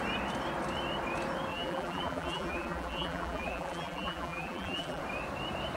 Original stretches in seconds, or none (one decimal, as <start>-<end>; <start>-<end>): 0.0-1.5; 5.0-5.8